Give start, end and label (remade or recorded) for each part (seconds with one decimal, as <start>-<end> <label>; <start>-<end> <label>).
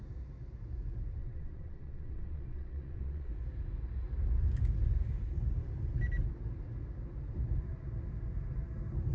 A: 0.0-1.2 recorded; 1.2-3.3 remade; 3.3-9.1 recorded